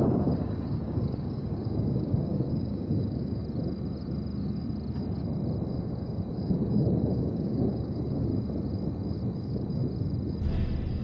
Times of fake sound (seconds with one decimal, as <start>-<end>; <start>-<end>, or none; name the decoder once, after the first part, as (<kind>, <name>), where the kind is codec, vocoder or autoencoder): 0.0-3.4 (codec, DAC); 5.8-8.3; 9.3-9.8